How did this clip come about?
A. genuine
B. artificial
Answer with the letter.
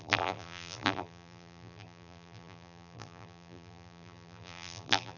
B